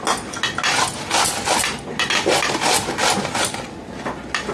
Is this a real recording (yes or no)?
yes